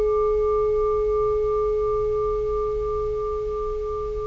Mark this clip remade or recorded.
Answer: recorded